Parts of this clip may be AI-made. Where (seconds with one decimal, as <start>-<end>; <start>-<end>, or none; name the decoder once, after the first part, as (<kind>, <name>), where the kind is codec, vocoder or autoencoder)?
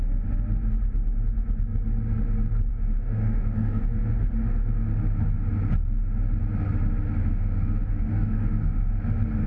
2.7-3.8 (autoencoder, DAC-VAE); 7.2-8.9